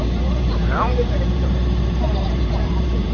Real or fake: fake